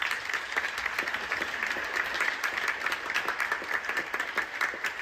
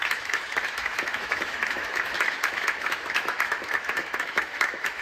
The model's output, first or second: second